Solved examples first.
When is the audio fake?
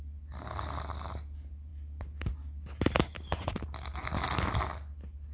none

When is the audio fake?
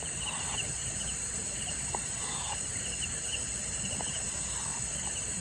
0.0-2.7 (vocoder, BigVGAN v2); 3.6-4.7